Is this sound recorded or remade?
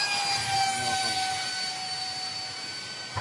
recorded